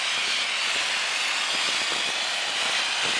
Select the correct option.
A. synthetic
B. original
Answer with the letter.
B